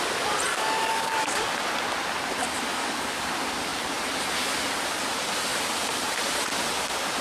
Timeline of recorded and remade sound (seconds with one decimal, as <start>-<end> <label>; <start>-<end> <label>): 0.0-0.5 recorded; 0.5-1.5 remade; 1.5-2.7 recorded; 2.7-3.3 remade; 3.3-7.2 recorded